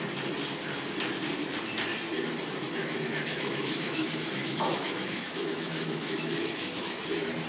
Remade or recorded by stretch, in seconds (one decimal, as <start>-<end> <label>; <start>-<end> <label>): 0.0-2.8 recorded; 2.8-7.0 remade; 7.0-7.5 recorded